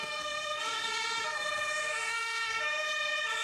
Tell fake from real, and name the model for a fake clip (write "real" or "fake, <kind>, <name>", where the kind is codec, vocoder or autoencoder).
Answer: fake, codec, SNAC